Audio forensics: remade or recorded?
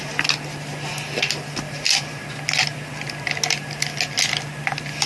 recorded